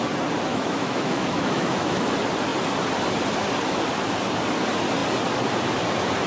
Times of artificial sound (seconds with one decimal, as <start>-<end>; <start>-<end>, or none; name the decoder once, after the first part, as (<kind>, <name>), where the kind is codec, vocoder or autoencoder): 0.5-2.1 (autoencoder, DAC-VAE)